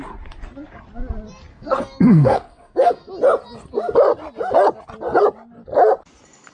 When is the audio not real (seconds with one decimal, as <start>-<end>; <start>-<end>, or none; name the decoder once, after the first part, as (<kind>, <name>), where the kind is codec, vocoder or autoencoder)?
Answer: 1.5-3.1 (codec, SNAC)